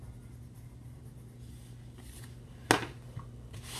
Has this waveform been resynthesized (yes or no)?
no